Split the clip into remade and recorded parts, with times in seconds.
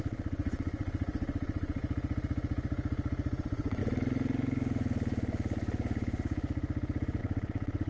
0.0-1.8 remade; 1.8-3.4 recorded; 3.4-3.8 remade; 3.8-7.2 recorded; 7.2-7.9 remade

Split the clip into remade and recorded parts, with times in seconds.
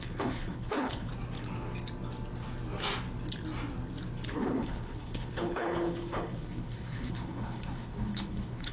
0.0-1.1 remade; 1.1-4.3 recorded; 4.3-8.7 remade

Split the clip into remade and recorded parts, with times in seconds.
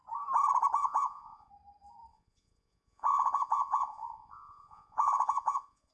0.0-0.8 recorded; 0.8-1.5 remade; 1.5-2.1 recorded; 2.1-5.9 remade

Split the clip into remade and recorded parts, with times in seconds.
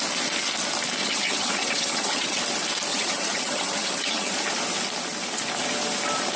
0.0-1.0 recorded; 1.0-2.4 remade; 2.4-2.9 recorded; 2.9-4.3 remade; 4.3-6.4 recorded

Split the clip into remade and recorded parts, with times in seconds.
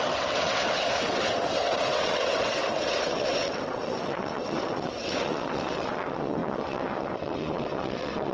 0.0-8.3 remade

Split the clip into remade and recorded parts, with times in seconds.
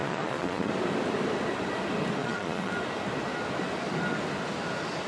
0.0-0.7 remade; 0.7-2.2 recorded; 2.2-2.7 remade; 2.7-5.1 recorded